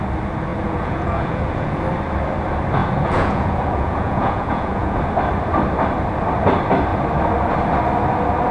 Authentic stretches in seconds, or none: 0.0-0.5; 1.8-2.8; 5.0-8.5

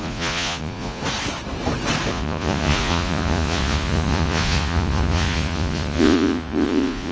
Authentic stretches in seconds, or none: 1.0-2.1

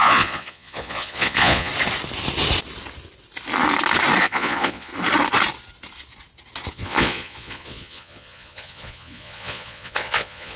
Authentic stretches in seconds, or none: 1.7-4.2; 4.9-6.7